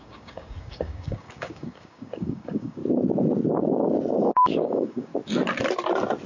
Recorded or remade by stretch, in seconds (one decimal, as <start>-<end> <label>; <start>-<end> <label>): 0.0-2.8 remade; 2.8-4.3 recorded; 4.3-5.1 remade; 5.1-6.3 recorded

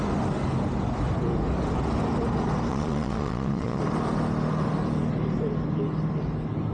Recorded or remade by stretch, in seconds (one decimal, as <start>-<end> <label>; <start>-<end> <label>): 0.0-2.7 recorded; 2.7-3.8 remade; 3.8-6.7 recorded